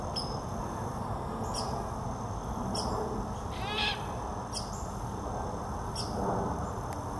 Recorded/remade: recorded